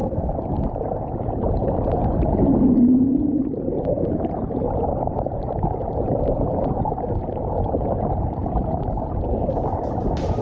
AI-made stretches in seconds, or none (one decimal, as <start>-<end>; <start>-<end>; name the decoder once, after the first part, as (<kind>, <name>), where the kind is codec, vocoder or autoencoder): 0.7-1.6 (vocoder, BigVGAN v2); 3.4-8.4; 9.4-10.4